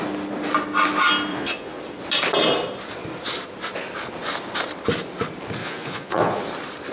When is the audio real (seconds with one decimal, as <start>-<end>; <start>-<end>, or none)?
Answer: 0.0-1.3; 1.8-5.6; 6.4-6.9